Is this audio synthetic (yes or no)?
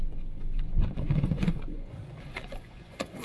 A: yes